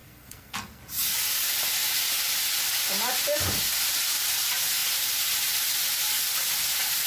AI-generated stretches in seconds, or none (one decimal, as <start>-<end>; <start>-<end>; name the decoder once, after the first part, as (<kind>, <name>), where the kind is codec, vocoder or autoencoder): 0.0-0.8 (codec, SNAC)